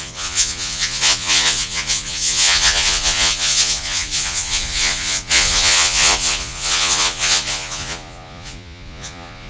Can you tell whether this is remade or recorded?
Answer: remade